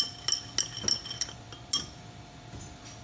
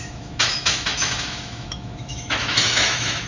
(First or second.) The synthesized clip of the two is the second